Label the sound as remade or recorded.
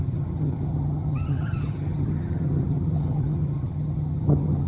remade